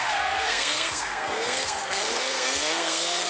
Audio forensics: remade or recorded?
remade